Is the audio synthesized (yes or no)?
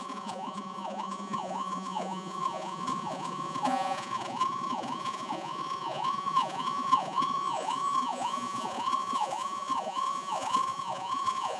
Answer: yes